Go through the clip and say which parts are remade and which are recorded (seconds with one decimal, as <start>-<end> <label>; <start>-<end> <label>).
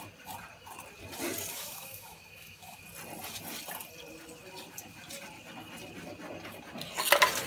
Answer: 0.0-1.5 recorded; 1.5-2.8 remade; 2.8-7.5 recorded